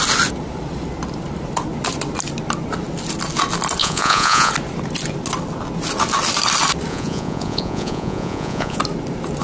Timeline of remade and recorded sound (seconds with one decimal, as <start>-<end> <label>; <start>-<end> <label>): 0.0-3.8 recorded; 3.8-4.5 remade; 4.5-6.9 recorded; 6.9-8.8 remade; 8.8-9.4 recorded

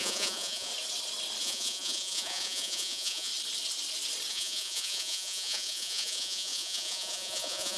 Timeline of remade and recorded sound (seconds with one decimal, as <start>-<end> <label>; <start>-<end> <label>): 0.0-0.7 remade; 0.7-1.4 recorded; 1.4-3.3 remade; 3.3-4.3 recorded; 4.3-7.8 remade

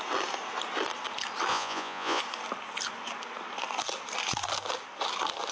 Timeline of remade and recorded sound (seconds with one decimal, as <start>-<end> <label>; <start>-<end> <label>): 0.0-1.5 recorded; 1.5-2.2 remade; 2.2-5.5 recorded